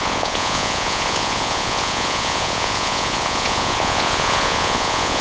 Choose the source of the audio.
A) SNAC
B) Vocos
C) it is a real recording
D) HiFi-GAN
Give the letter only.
B